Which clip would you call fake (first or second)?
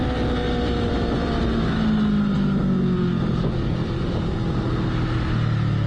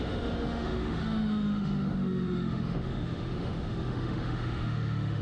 second